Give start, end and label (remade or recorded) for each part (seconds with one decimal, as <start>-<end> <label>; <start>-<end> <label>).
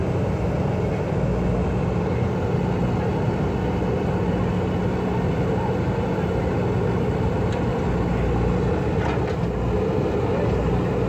0.0-11.1 recorded